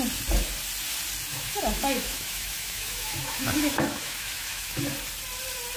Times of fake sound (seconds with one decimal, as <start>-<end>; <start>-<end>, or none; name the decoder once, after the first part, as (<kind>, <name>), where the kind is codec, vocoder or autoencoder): 1.3-4.8 (autoencoder, DAC-VAE)